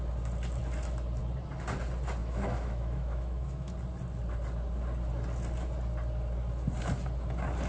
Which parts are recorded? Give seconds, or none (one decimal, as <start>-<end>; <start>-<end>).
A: 0.0-2.2; 3.7-7.7